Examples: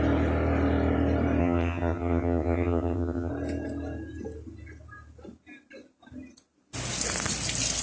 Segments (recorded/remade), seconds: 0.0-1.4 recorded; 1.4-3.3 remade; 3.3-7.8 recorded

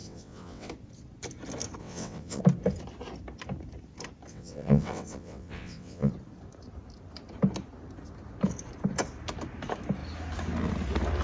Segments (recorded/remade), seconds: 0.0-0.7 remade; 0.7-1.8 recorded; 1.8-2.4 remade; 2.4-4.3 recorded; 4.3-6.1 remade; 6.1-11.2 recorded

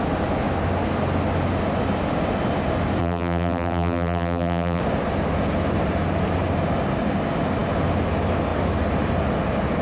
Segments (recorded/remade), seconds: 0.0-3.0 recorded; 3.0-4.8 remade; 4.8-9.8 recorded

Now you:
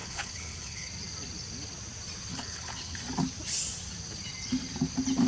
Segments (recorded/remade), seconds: 0.0-0.9 remade; 0.9-2.3 recorded; 2.3-3.0 remade; 3.0-5.3 recorded

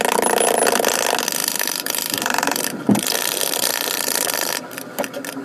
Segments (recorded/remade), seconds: 0.0-1.4 recorded; 1.4-4.6 remade; 4.6-5.4 recorded

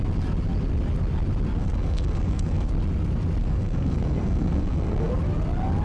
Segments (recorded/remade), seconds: 0.0-1.6 recorded; 1.6-2.7 remade; 2.7-3.4 recorded; 3.4-5.1 remade; 5.1-5.8 recorded

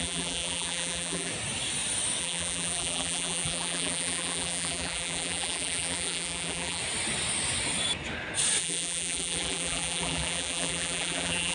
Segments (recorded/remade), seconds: 0.0-1.3 remade; 1.3-2.2 recorded; 2.2-6.8 remade; 6.8-8.6 recorded; 8.6-11.5 remade